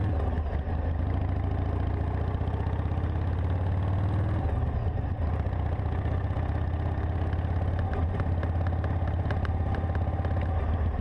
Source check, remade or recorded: recorded